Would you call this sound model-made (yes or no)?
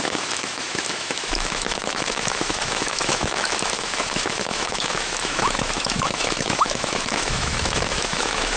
yes